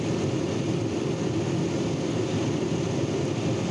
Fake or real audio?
real